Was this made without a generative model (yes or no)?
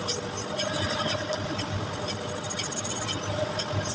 yes